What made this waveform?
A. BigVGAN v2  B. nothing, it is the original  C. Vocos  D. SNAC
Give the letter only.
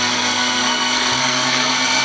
D